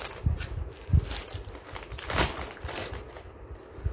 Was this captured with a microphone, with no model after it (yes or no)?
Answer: yes